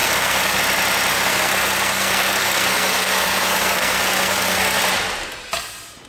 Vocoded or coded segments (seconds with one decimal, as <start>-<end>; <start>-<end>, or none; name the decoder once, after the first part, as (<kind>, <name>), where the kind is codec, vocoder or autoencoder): 0.0-0.6 (codec, SNAC); 1.1-4.8

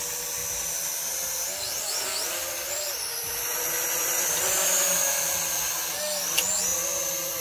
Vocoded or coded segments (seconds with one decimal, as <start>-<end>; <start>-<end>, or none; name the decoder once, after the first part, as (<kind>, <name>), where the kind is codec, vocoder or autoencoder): 0.4-0.9 (vocoder, BigVGAN v2); 1.7-5.7

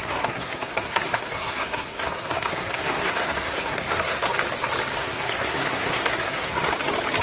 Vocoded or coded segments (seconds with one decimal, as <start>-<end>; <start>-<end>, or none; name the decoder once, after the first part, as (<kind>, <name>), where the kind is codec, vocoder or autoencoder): 0.0-4.3 (codec, SNAC); 5.0-6.7

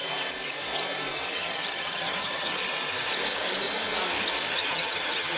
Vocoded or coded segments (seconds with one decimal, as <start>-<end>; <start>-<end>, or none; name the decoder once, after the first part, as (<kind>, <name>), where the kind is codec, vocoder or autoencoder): 1.3-2.6 (vocoder, HiFi-GAN); 4.5-5.4